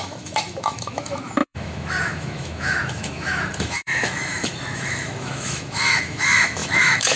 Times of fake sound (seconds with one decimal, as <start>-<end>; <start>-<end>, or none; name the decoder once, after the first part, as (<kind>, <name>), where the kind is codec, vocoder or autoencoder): 0.0-7.2 (autoencoder, DAC-VAE)